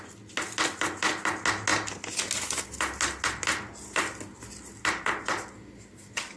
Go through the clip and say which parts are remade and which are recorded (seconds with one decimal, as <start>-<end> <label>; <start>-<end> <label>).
0.0-6.4 recorded